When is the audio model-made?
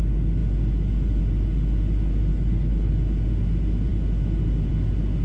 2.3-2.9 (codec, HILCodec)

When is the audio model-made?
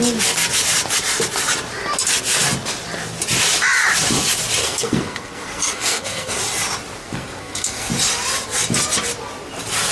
4.6-6.4 (codec, SNAC); 7.0-7.9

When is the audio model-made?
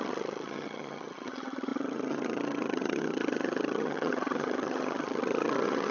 0.0-5.9 (vocoder, HiFi-GAN)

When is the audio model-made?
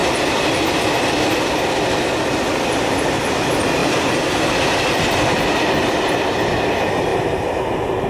0.0-1.7 (vocoder, BigVGAN v2); 3.8-4.6; 7.1-8.1